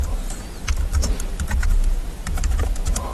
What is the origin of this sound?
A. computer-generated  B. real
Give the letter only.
A